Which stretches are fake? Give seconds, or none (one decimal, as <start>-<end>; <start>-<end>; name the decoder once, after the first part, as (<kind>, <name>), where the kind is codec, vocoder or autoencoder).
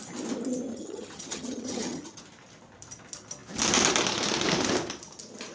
0.7-2.2 (vocoder, HiFi-GAN)